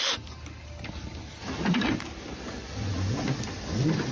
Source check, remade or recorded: recorded